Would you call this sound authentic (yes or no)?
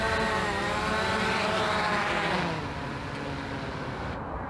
yes